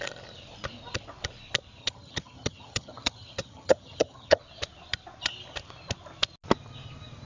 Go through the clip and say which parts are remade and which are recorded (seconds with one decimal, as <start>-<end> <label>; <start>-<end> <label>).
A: 0.0-1.8 recorded; 1.8-4.4 remade; 4.4-7.3 recorded